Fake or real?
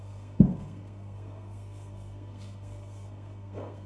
fake